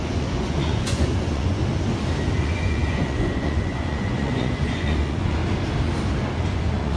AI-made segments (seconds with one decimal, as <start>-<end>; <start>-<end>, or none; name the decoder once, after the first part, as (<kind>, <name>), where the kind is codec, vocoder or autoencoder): 0.0-1.6 (vocoder, Vocos); 2.4-5.4; 6.5-7.0